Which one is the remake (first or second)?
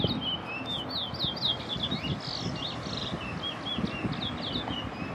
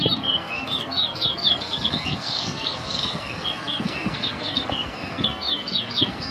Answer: second